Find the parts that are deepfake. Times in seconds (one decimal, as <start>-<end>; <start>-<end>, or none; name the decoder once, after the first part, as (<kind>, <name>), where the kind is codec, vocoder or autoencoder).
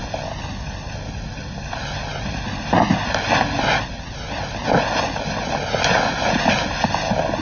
none